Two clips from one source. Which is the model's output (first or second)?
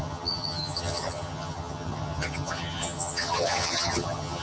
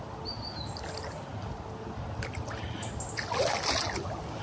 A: first